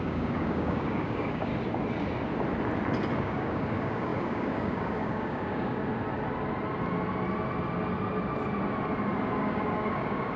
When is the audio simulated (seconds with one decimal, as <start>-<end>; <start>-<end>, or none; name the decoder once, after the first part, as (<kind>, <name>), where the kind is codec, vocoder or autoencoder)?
0.0-1.5 (codec, DAC); 3.2-5.8; 9.4-10.4